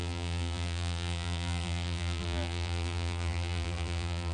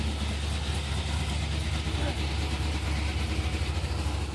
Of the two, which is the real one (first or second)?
second